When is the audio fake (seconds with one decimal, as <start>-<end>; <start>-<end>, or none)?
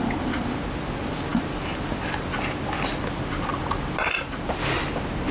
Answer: none